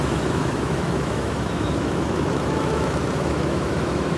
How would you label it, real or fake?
fake